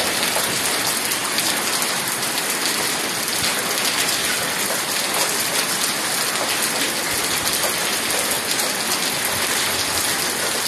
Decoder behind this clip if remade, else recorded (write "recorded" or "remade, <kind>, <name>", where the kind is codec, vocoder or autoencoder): recorded